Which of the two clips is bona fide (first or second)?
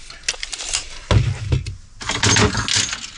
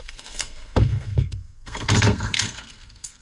first